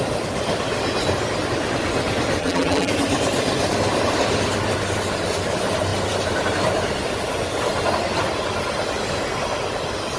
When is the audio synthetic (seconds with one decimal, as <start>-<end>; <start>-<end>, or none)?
2.4-2.9

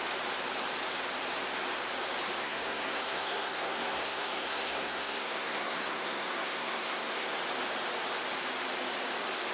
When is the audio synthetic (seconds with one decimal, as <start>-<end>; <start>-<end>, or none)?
2.4-7.4

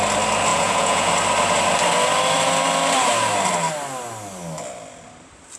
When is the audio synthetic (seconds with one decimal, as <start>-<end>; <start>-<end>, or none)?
0.5-1.1

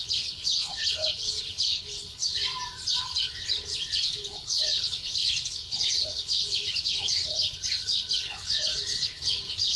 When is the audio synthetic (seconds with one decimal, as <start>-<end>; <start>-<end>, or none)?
0.0-2.4; 3.0-9.8